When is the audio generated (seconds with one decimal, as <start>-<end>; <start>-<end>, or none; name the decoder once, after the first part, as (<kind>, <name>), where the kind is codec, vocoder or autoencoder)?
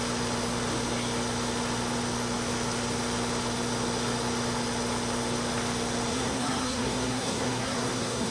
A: 6.1-8.3 (codec, SNAC)